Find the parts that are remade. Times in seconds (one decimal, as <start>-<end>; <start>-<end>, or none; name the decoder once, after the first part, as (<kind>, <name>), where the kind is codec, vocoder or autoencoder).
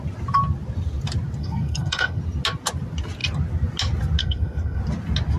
1.4-2.2 (codec, SNAC); 4.2-4.8